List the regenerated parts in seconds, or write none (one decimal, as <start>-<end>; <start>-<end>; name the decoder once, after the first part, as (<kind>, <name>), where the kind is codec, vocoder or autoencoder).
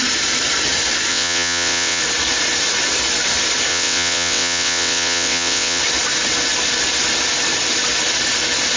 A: 1.1-2.0 (vocoder, WaveNeXt); 3.7-5.8